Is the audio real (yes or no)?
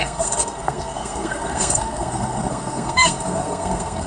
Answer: no